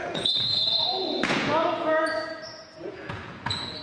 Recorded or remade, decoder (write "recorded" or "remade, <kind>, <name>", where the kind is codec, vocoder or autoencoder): remade, vocoder, Vocos